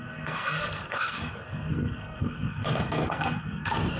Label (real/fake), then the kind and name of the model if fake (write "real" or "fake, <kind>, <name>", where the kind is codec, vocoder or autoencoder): fake, codec, SNAC